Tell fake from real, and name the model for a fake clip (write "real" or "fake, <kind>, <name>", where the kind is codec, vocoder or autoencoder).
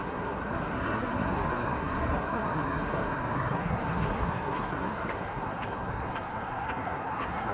fake, codec, SNAC